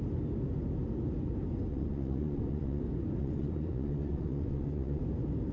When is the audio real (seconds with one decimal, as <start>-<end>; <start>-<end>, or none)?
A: 0.0-1.7; 2.8-3.2; 5.0-5.5